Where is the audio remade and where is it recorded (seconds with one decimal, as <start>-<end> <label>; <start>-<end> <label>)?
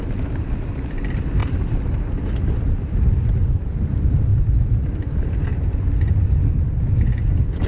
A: 0.0-1.4 remade; 1.4-2.3 recorded; 2.3-5.5 remade; 5.5-6.2 recorded; 6.2-7.7 remade